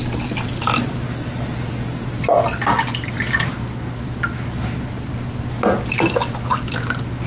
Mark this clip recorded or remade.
recorded